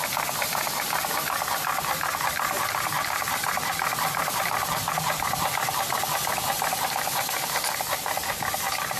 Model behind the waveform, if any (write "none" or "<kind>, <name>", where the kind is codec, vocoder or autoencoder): vocoder, BigVGAN v2